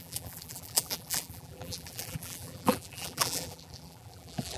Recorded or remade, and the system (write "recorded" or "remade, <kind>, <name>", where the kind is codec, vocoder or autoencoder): remade, vocoder, BigVGAN v2